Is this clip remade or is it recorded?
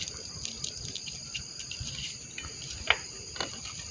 remade